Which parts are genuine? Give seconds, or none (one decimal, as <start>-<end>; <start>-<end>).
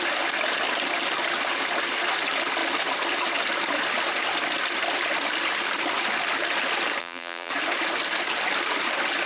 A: 0.0-7.0; 7.5-9.3